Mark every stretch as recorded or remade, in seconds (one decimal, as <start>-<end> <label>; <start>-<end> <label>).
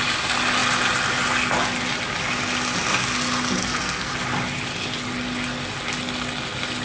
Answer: 0.0-3.6 recorded; 3.6-4.1 remade; 4.1-6.8 recorded